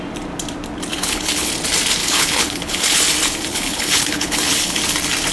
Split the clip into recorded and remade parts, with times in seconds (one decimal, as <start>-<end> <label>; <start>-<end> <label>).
0.0-0.9 recorded; 0.9-1.5 remade; 1.5-2.0 recorded; 2.0-3.0 remade; 3.0-3.5 recorded; 3.5-4.8 remade; 4.8-5.3 recorded